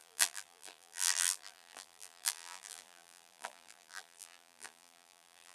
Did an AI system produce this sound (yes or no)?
yes